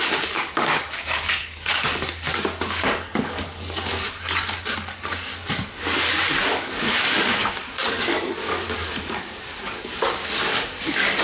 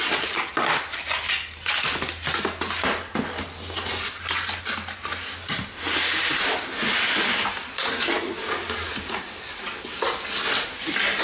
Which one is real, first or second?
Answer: second